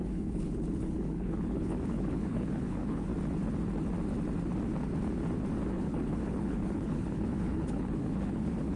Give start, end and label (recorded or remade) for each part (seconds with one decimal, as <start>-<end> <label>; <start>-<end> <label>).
0.0-3.1 remade; 3.1-5.7 recorded; 5.7-8.8 remade